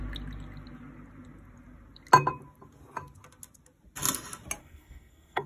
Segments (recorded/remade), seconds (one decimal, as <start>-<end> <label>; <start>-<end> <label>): 0.0-4.6 recorded; 4.6-5.5 remade